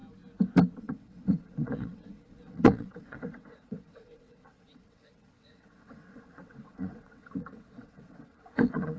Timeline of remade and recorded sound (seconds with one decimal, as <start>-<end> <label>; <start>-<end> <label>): 0.0-0.8 recorded; 0.8-9.0 remade